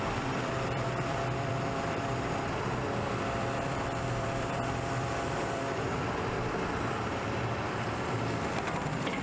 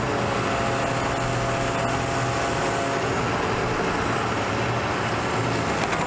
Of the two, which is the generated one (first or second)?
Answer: first